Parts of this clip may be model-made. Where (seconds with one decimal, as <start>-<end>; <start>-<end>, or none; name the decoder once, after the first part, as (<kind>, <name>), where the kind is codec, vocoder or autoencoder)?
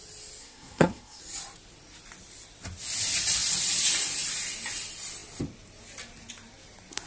0.4-1.2 (codec, SNAC)